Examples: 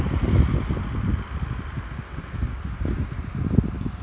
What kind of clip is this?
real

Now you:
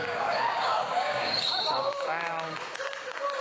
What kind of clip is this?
fake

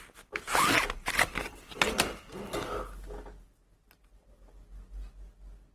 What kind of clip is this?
real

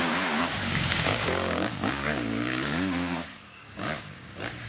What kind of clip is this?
fake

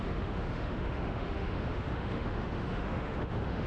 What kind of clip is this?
fake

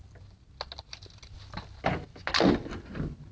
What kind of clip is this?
real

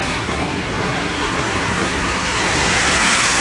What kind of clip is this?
fake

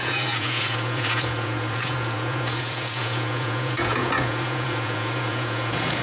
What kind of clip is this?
fake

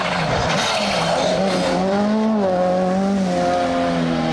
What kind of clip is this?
real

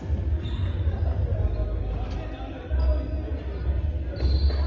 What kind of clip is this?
real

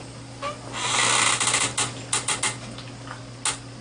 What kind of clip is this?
real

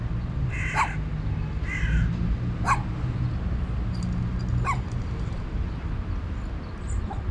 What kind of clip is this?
real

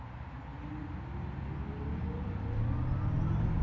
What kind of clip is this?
real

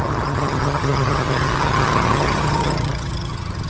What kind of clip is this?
fake